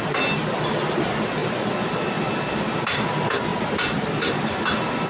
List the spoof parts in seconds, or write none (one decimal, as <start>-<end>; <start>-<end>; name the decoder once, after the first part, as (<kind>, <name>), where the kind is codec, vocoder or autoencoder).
none